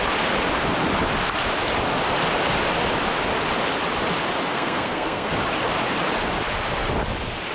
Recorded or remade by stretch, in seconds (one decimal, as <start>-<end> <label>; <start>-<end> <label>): 0.0-4.5 recorded; 4.5-5.3 remade; 5.3-7.5 recorded

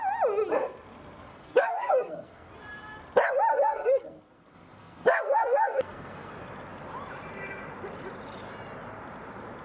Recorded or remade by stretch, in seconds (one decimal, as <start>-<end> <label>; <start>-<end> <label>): 0.0-1.3 recorded; 1.3-2.5 remade; 2.5-3.5 recorded; 3.5-6.3 remade; 6.3-9.6 recorded

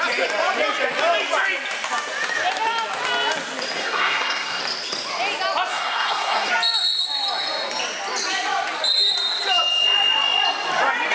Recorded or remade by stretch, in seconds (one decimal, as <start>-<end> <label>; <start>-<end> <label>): 0.0-3.8 recorded; 3.8-4.6 remade; 4.6-5.7 recorded; 5.7-6.5 remade; 6.5-11.1 recorded

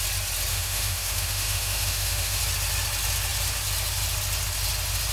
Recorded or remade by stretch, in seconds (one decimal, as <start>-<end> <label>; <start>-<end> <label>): 0.0-0.5 recorded; 0.5-2.4 remade; 2.4-5.1 recorded

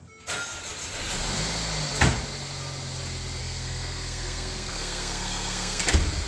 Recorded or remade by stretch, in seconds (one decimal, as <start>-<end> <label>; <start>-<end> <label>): 0.0-3.4 recorded; 3.4-5.8 remade; 5.8-6.3 recorded

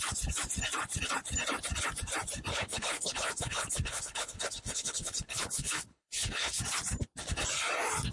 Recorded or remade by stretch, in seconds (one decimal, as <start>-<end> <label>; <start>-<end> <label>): 0.0-2.5 recorded; 2.5-6.6 remade; 6.6-8.1 recorded

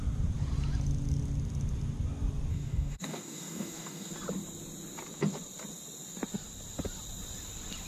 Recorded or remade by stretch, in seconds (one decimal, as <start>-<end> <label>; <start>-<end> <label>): 0.0-2.5 recorded; 2.5-4.1 remade; 4.1-7.9 recorded